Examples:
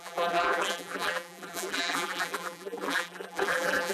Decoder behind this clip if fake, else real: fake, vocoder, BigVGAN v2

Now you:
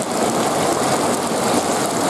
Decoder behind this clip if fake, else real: real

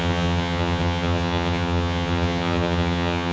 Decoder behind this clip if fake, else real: fake, vocoder, HiFi-GAN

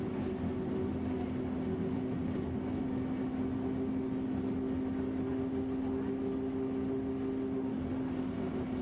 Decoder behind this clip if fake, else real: real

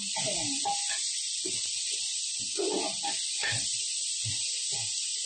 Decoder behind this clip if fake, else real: real